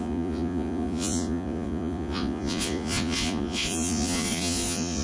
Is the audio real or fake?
fake